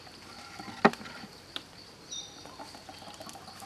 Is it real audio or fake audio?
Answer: real